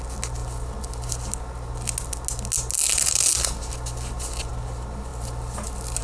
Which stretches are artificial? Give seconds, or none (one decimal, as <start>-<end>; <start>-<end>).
none